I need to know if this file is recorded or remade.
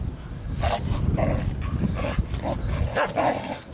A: recorded